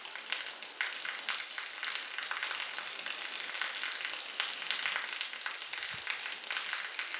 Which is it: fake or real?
real